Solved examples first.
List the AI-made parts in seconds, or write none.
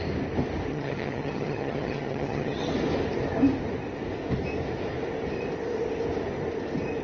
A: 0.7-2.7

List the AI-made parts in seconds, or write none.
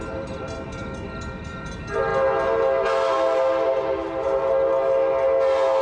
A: 0.0-2.1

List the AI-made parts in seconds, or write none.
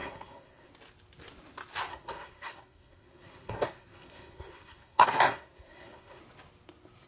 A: 0.0-0.7; 1.9-6.2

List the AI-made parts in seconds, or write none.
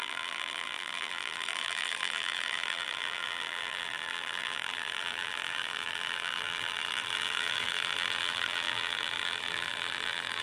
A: 0.0-10.4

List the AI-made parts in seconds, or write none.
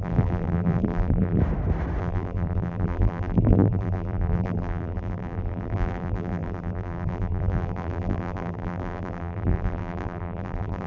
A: 0.0-1.4; 2.0-10.9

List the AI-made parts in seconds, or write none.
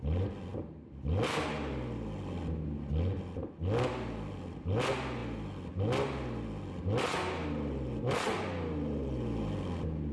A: none